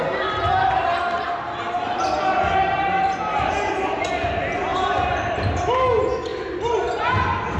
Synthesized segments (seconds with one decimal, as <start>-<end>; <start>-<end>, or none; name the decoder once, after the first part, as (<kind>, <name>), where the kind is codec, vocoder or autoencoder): 2.6-4.0 (vocoder, BigVGAN v2); 4.7-5.6; 6.3-7.0